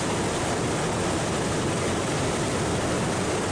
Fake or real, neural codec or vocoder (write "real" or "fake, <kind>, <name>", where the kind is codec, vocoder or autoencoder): real